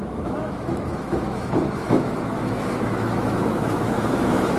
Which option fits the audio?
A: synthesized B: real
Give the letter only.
A